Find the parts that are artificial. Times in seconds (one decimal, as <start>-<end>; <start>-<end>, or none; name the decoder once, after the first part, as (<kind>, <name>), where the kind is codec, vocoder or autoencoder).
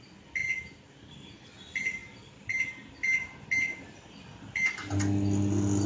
none